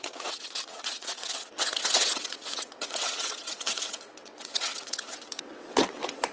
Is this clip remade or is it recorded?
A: remade